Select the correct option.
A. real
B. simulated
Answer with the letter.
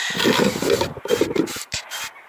A